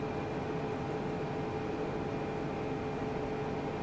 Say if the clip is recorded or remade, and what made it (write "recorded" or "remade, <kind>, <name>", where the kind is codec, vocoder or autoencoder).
recorded